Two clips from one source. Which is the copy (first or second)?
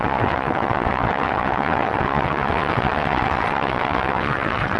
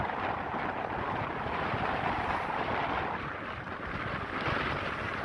first